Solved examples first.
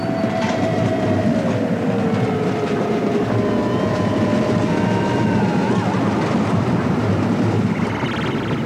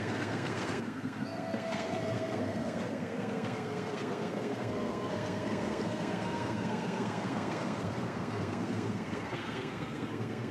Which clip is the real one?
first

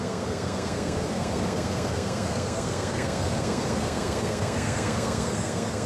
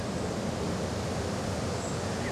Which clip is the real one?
second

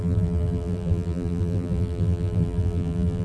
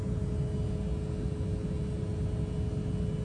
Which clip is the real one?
second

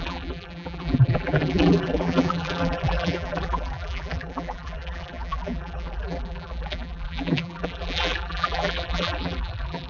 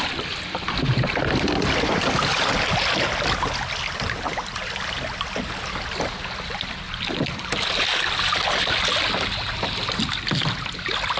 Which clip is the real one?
second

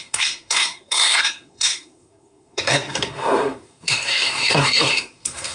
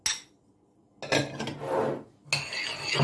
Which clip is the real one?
second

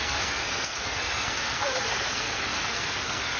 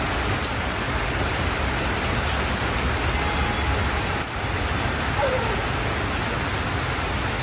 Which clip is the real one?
second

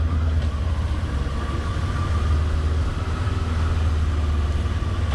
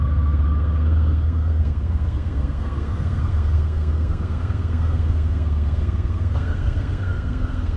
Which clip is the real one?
first